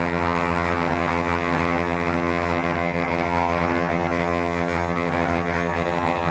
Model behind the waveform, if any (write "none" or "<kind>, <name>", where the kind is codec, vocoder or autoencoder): vocoder, HiFi-GAN